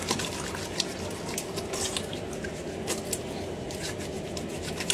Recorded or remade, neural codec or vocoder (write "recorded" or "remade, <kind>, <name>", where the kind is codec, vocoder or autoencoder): recorded